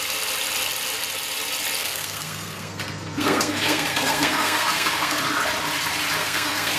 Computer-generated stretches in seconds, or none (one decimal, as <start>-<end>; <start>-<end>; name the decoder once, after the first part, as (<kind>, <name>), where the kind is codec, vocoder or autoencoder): 1.8-5.2 (codec, SNAC); 6.2-6.8